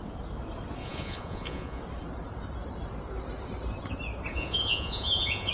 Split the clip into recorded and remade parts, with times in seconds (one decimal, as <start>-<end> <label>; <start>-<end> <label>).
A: 0.0-0.8 recorded; 0.8-1.8 remade; 1.8-4.3 recorded; 4.3-5.5 remade